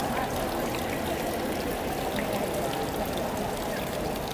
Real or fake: real